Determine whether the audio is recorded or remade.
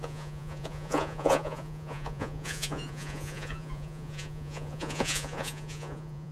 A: remade